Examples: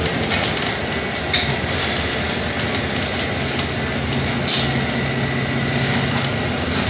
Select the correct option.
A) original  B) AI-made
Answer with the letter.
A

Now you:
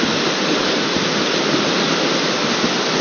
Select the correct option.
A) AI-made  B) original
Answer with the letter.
B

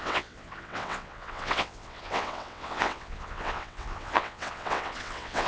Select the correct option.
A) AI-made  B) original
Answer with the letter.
A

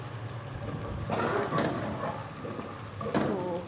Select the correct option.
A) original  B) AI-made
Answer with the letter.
A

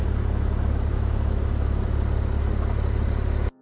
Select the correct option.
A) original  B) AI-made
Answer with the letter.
A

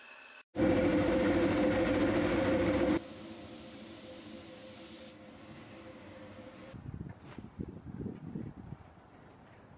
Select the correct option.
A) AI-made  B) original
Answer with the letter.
B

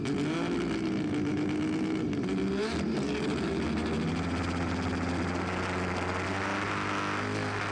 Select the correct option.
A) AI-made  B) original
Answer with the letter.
B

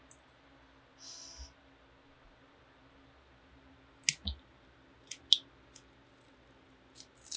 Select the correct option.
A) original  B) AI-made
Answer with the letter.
A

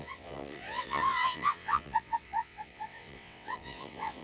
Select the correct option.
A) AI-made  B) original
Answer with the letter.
A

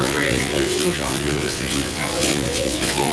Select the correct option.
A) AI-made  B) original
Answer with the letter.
A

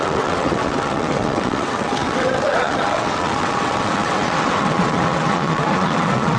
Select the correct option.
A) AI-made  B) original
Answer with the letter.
A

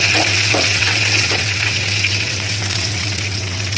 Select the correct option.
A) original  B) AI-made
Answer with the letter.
B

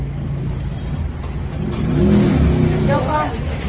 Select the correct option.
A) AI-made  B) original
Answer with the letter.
B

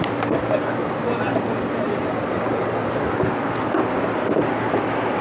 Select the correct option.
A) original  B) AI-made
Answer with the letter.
A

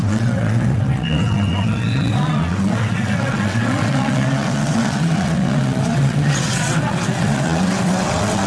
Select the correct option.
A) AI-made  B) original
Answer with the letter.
A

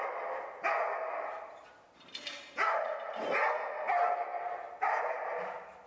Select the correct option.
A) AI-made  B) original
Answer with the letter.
B